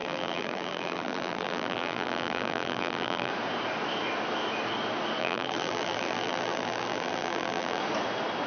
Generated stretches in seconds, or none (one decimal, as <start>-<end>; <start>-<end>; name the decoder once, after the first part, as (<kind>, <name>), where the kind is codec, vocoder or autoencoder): 0.0-3.3 (vocoder, BigVGAN v2); 5.2-7.8